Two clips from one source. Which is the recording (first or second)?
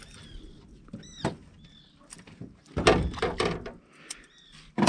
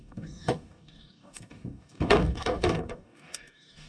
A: first